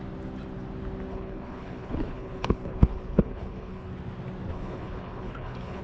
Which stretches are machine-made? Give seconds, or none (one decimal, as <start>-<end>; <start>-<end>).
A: 1.1-3.9; 4.5-5.8